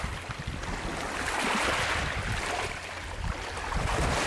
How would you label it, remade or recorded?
recorded